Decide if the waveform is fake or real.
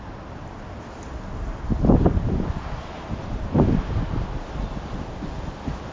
real